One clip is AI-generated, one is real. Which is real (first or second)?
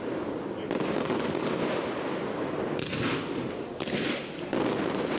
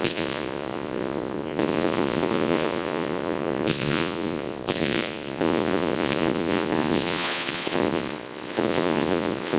first